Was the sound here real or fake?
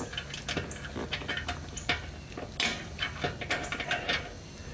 real